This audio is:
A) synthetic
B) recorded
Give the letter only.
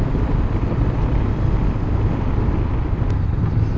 B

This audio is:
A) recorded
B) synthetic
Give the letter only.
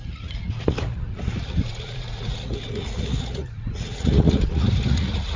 B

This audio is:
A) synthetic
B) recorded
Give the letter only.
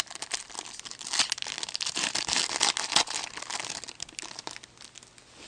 B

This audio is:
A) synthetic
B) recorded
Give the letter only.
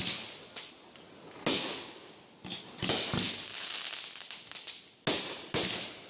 B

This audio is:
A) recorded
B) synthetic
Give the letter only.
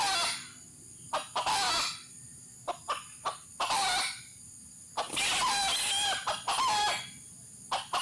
A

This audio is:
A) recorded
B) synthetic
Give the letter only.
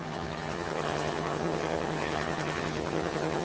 B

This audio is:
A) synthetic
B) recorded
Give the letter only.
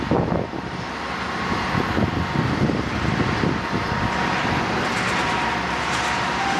B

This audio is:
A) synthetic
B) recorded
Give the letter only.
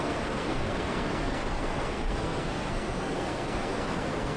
A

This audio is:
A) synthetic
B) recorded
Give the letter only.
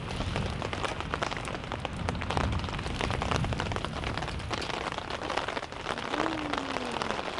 B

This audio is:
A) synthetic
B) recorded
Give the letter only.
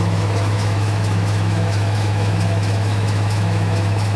A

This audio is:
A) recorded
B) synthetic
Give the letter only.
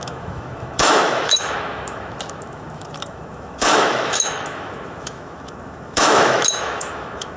B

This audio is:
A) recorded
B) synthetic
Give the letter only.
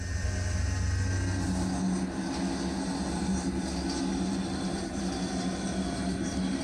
A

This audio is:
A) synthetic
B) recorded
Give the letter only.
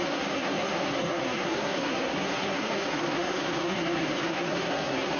A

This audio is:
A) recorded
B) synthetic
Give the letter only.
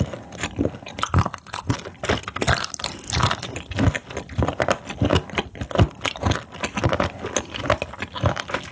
A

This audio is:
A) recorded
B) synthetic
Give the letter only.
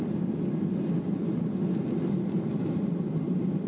A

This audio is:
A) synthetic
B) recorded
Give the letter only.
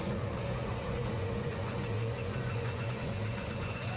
A